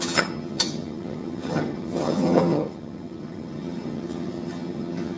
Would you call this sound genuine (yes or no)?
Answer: no